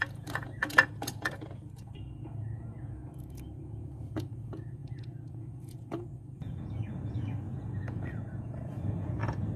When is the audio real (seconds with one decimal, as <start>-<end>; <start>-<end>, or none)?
none